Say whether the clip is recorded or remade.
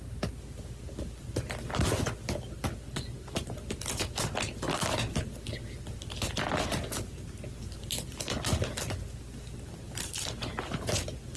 recorded